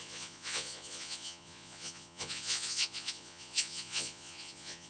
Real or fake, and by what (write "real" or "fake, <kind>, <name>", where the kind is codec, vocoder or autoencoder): fake, vocoder, Vocos